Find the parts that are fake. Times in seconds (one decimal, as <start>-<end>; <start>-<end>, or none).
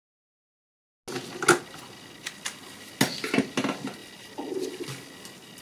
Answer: none